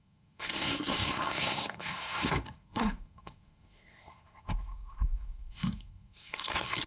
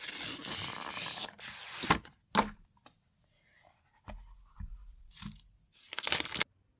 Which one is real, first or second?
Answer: second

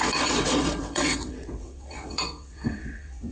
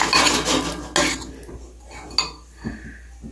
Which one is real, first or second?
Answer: second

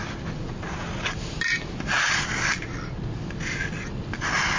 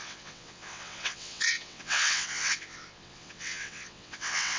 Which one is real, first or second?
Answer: first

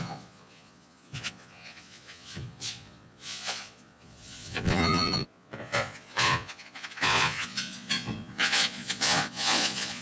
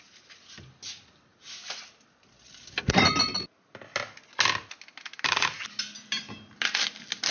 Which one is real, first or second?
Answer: second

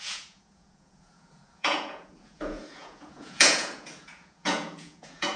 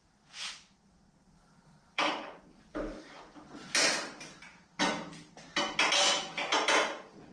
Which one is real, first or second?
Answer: second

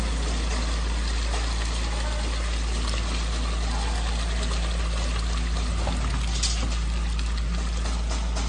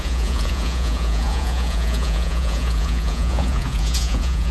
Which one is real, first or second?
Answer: first